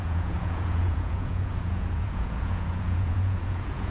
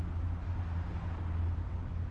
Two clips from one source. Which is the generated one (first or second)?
first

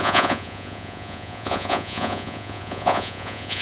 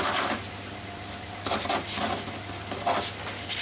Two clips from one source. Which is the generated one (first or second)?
first